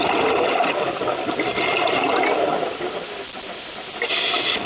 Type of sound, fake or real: real